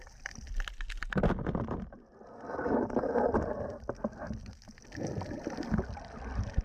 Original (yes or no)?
yes